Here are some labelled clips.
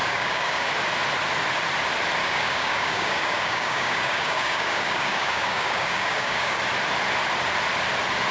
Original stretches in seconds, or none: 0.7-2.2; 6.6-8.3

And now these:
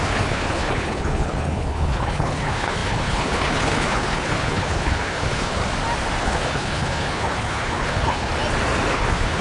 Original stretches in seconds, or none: 5.6-6.2; 8.3-8.9

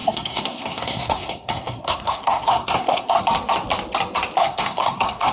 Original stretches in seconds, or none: 3.2-4.4

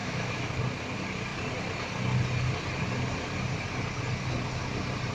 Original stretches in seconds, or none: 0.6-5.1

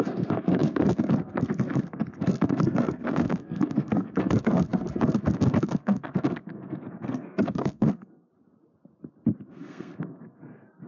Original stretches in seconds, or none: 8.3-9.4

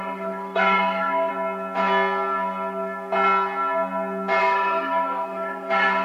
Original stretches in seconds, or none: 1.3-4.4

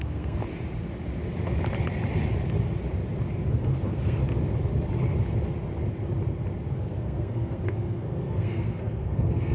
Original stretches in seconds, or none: 0.4-3.5; 4.2-6.7

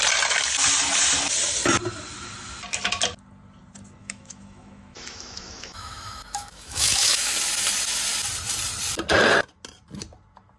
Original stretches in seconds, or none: 0.0-4.0; 7.3-10.6